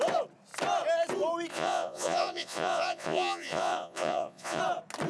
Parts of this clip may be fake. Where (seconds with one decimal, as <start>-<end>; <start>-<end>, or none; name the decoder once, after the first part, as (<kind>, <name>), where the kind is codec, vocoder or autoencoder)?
1.5-4.6 (vocoder, Vocos)